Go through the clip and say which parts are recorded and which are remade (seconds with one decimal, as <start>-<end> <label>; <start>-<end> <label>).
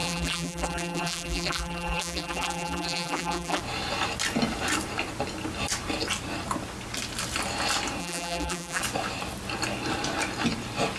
0.0-3.6 remade; 3.6-8.0 recorded; 8.0-8.8 remade; 8.8-11.0 recorded